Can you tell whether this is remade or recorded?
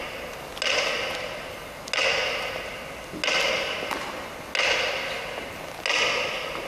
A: recorded